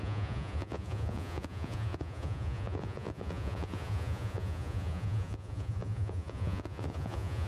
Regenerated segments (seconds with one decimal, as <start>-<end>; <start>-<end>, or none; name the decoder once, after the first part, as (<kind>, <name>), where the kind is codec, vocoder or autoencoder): 0.0-7.5 (vocoder, Vocos)